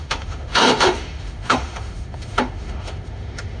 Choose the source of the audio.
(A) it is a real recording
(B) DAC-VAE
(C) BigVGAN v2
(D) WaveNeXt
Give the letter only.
B